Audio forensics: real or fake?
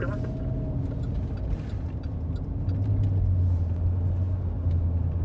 real